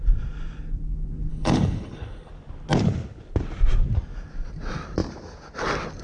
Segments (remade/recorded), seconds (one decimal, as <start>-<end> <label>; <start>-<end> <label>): 0.0-1.3 recorded; 1.3-2.3 remade; 2.3-6.0 recorded